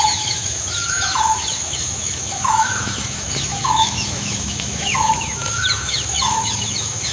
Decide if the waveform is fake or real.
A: fake